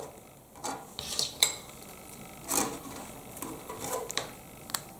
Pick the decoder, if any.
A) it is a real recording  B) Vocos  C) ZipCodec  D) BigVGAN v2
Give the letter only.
D